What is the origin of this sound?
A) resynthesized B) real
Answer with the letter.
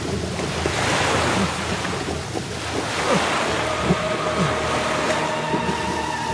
B